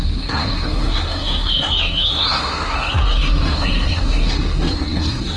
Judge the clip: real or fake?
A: fake